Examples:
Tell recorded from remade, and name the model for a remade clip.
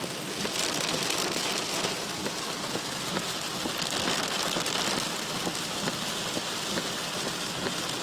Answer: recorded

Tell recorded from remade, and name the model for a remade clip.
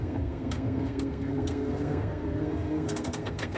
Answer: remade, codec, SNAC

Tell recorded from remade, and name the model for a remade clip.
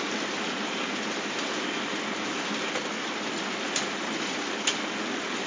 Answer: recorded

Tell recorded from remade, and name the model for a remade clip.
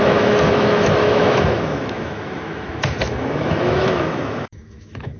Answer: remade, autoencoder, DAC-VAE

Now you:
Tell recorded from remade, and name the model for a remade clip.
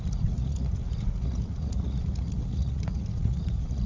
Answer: remade, vocoder, Vocos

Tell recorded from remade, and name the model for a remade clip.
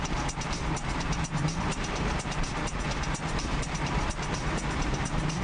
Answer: remade, vocoder, BigVGAN v2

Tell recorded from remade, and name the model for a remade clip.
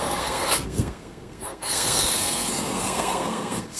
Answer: remade, codec, SNAC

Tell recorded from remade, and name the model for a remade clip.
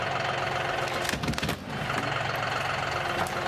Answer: recorded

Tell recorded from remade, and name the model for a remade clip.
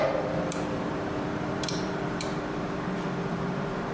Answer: remade, vocoder, BigVGAN v2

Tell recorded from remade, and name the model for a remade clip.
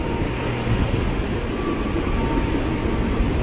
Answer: recorded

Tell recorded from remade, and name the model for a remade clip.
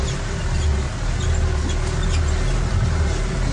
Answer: recorded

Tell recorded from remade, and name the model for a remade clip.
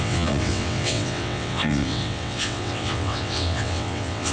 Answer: remade, vocoder, WaveNeXt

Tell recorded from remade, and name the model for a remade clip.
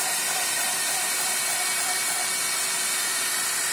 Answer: recorded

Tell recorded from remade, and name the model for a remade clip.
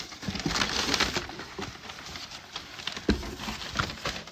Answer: recorded